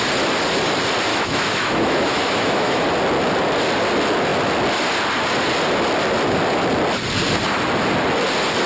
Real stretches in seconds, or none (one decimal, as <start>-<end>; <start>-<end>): 0.0-1.1; 2.8-8.7